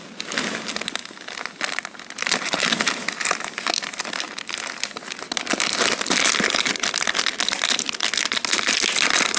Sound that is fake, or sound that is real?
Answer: real